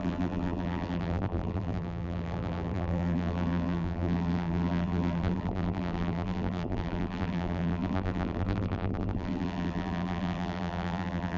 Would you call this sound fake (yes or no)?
yes